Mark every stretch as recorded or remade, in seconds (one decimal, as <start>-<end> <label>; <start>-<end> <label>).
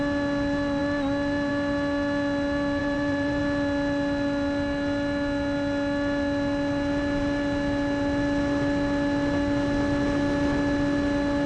0.0-2.8 recorded; 2.8-3.4 remade; 3.4-11.5 recorded